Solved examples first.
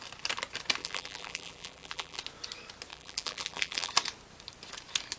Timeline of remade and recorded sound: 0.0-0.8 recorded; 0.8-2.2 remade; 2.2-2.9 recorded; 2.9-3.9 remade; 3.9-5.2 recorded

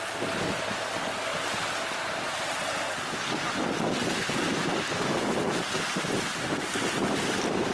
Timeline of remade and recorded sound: 0.0-7.7 recorded

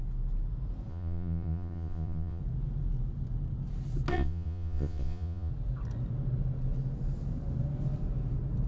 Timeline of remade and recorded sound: 0.0-0.9 recorded; 0.9-2.4 remade; 2.4-4.1 recorded; 4.1-5.5 remade; 5.5-8.7 recorded